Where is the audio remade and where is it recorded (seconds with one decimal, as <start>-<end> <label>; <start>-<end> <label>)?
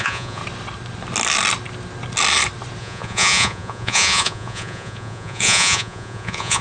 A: 0.0-0.4 remade; 0.4-2.8 recorded; 2.8-6.6 remade